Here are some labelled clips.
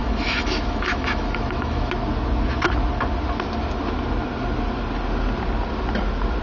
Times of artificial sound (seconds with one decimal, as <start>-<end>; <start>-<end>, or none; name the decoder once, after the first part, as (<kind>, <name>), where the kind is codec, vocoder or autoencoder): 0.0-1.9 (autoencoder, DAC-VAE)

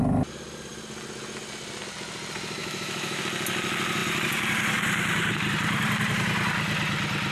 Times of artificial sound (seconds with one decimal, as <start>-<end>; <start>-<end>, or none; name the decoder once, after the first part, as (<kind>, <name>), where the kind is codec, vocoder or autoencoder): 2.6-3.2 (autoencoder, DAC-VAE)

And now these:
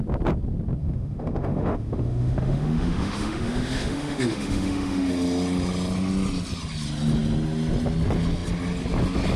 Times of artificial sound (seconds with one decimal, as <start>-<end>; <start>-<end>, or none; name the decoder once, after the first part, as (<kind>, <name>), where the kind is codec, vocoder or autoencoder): 0.8-5.1 (autoencoder, DAC-VAE)

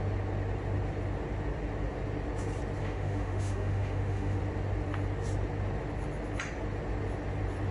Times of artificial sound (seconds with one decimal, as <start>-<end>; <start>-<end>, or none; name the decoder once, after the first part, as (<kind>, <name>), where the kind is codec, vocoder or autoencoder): 2.8-4.4 (autoencoder, DAC-VAE)

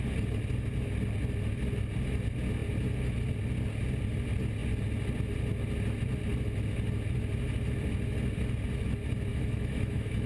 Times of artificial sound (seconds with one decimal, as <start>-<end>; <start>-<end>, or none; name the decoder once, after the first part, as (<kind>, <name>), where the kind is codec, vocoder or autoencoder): 9.3-10.3 (autoencoder, DAC-VAE)

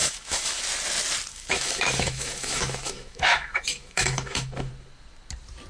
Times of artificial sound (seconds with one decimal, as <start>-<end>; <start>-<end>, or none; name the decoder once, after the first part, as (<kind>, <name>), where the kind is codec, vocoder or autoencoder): 0.0-0.6 (autoencoder, DAC-VAE); 1.3-4.7